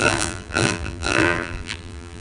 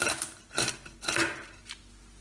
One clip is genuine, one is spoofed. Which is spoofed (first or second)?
first